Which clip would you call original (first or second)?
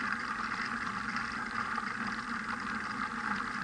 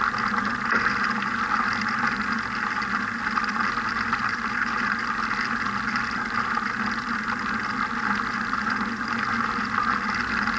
second